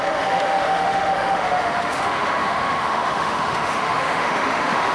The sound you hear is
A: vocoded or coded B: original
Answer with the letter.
A